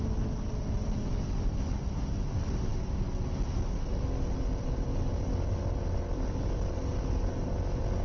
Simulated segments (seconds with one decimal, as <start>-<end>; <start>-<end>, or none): none